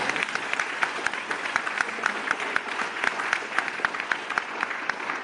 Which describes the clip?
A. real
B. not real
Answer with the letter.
B